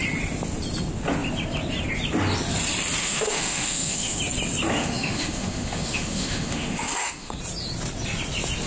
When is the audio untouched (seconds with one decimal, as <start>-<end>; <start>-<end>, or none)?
0.0-3.0; 4.2-4.7; 7.4-8.7